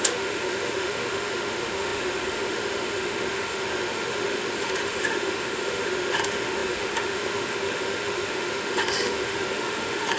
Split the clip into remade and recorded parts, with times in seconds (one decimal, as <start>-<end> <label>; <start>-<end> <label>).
0.0-10.2 remade